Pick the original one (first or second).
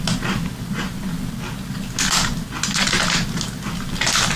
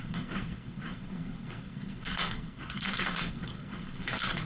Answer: first